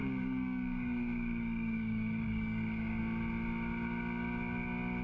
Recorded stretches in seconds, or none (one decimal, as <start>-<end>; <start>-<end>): 3.0-5.0